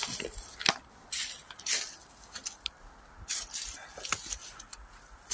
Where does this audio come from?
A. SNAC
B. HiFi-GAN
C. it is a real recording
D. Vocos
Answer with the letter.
C